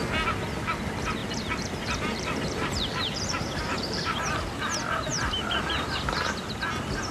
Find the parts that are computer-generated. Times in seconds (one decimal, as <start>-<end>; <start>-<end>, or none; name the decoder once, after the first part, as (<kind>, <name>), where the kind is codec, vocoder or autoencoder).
1.2-4.3 (vocoder, BigVGAN v2); 5.1-5.9